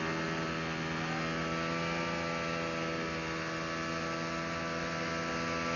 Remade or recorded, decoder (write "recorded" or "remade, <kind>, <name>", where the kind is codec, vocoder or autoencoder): recorded